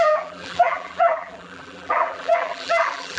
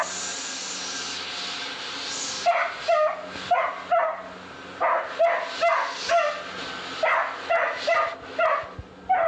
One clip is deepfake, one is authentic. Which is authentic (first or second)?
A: second